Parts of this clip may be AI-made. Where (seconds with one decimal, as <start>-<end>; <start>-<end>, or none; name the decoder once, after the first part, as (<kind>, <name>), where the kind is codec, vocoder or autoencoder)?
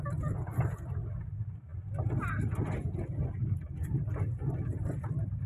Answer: none